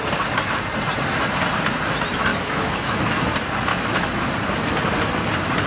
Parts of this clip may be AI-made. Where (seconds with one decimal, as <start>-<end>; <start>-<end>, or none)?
2.3-3.1; 3.7-4.3